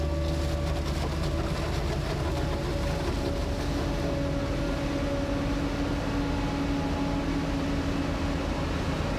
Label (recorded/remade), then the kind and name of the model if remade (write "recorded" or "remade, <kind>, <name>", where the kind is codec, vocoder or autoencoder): recorded